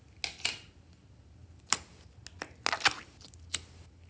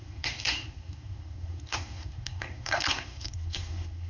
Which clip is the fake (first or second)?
second